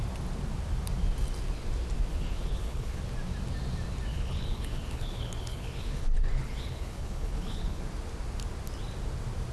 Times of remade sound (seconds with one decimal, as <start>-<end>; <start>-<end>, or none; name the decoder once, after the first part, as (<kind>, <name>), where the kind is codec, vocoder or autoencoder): 2.1-3.0 (codec, HILCodec); 4.1-7.8